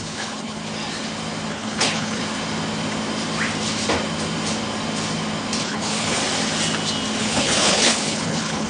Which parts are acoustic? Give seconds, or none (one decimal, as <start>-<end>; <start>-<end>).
0.6-1.5; 2.2-5.6; 6.2-7.2